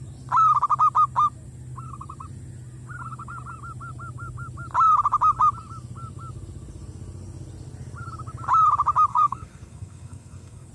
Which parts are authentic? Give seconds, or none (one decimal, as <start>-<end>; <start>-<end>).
0.0-9.1